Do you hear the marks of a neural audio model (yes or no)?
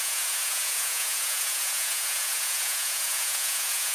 yes